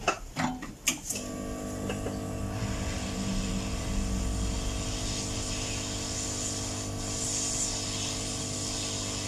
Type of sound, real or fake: real